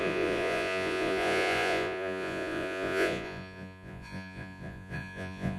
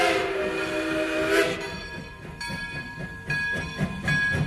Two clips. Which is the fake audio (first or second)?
first